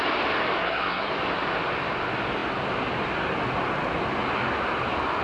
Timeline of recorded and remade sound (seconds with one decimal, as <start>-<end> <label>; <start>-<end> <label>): 0.0-0.6 recorded; 0.6-1.1 remade; 1.1-5.2 recorded